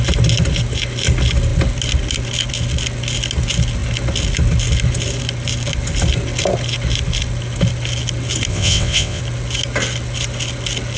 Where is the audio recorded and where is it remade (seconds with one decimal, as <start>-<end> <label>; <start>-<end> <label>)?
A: 0.0-8.5 recorded; 8.5-9.2 remade; 9.2-11.0 recorded